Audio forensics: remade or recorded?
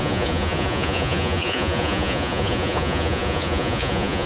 remade